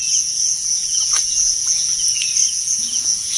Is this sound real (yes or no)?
no